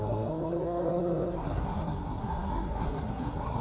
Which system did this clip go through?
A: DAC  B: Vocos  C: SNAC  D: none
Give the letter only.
C